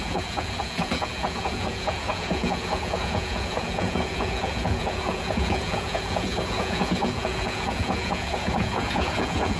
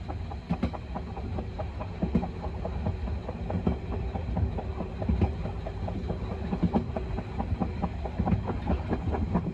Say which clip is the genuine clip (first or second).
second